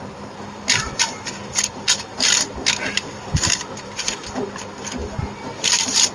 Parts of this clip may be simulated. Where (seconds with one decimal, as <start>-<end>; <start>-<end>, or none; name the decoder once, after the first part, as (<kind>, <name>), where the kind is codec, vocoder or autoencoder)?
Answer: none